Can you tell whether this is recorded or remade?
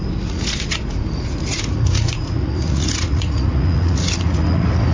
remade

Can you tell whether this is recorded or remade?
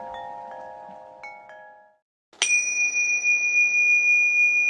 recorded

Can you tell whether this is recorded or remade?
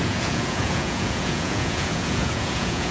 remade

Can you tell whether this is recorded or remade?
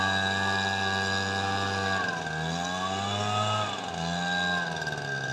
recorded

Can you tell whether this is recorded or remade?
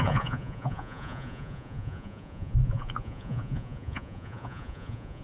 remade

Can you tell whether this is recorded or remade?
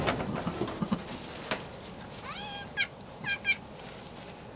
recorded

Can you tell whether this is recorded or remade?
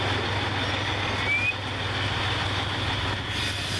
recorded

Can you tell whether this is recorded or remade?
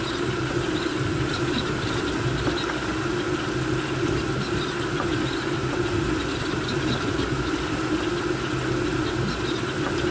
recorded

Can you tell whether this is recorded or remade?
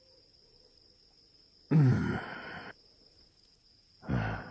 recorded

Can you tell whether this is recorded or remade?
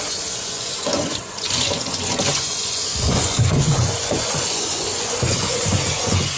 remade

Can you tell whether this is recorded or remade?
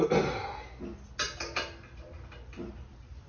recorded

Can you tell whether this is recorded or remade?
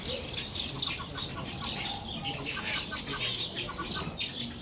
recorded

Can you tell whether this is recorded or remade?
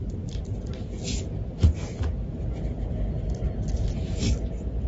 recorded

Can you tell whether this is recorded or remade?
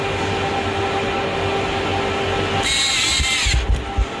recorded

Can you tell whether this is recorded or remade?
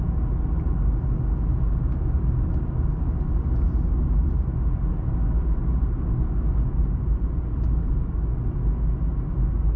recorded